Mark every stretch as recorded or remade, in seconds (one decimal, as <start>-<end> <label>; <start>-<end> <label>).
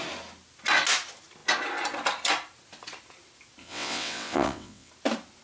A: 0.0-3.6 recorded; 3.6-4.9 remade; 4.9-5.4 recorded